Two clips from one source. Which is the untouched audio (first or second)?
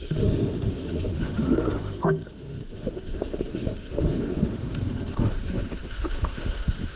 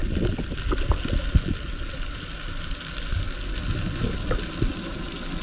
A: second